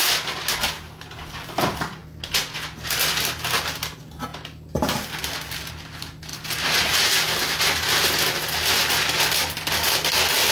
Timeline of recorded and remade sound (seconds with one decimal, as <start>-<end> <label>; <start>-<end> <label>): 0.0-6.3 recorded; 6.3-7.1 remade; 7.1-10.5 recorded